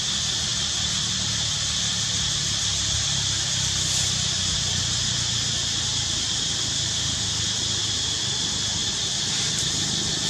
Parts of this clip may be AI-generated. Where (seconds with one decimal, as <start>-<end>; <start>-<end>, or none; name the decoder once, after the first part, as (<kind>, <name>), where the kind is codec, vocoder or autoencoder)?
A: 6.9-7.4 (autoencoder, DAC-VAE)